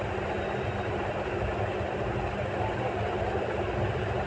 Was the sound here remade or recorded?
recorded